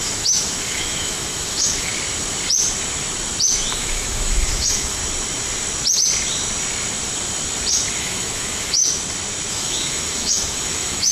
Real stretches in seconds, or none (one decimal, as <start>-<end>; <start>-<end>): 1.9-3.7; 5.0-8.0; 8.8-9.5